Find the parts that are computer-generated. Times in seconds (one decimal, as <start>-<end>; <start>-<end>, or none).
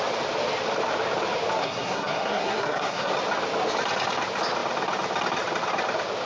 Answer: 1.6-3.1